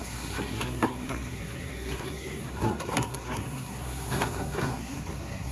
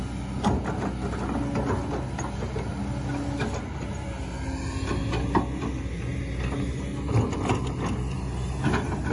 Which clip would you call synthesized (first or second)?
first